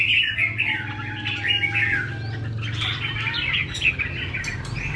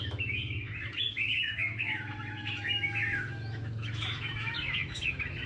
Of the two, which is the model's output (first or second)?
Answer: second